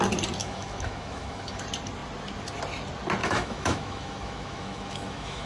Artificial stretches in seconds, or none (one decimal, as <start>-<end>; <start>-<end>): 0.4-1.6; 3.2-5.5

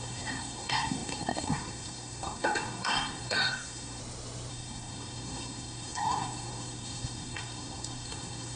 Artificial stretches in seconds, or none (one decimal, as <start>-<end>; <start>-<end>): 0.0-4.0; 4.5-8.6

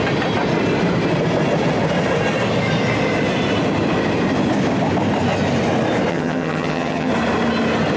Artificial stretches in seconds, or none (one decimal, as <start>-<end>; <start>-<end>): 6.1-7.1

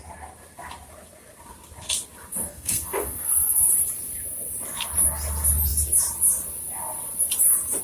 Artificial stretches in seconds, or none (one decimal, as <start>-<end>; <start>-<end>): 2.3-3.6